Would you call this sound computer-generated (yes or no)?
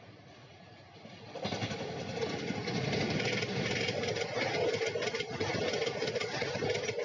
no